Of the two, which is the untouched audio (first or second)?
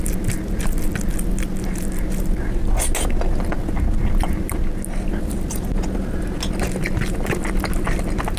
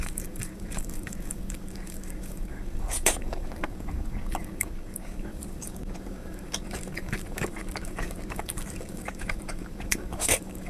first